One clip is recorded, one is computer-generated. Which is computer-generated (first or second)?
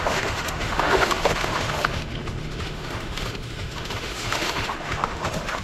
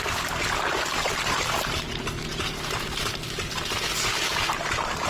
first